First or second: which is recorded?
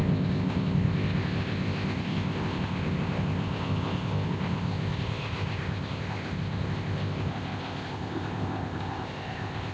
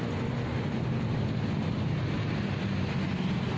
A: second